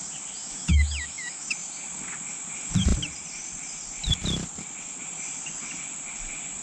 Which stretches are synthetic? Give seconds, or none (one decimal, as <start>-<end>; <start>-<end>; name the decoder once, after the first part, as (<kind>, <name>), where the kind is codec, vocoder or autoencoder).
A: 0.4-1.8 (autoencoder, DAC-VAE)